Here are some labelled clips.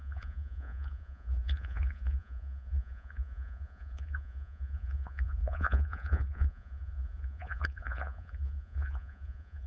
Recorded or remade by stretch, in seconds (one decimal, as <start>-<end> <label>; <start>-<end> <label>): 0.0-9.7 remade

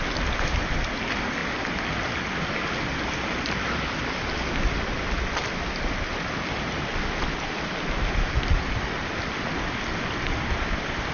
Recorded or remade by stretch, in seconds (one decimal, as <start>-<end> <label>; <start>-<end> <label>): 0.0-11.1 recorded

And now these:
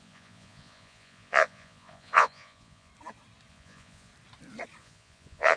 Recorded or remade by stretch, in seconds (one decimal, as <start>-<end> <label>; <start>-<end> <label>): 0.0-2.9 remade; 2.9-3.5 recorded; 3.5-4.1 remade; 4.1-4.8 recorded; 4.8-5.6 remade

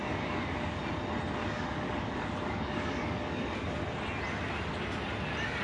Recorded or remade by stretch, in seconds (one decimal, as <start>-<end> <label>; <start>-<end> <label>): 0.0-0.8 remade; 0.8-1.4 recorded; 1.4-3.7 remade; 3.7-5.6 recorded

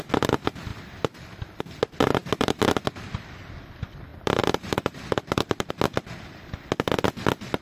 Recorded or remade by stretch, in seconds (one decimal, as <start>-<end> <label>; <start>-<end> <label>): 0.0-0.7 recorded; 0.7-1.6 remade; 1.6-4.1 recorded; 4.1-5.7 remade; 5.7-7.6 recorded

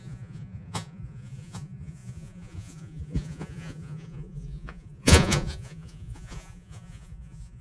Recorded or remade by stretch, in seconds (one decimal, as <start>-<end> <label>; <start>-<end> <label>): 0.0-7.6 remade

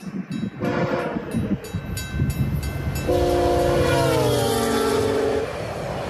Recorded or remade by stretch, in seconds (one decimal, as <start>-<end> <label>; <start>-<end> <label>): 0.0-6.1 recorded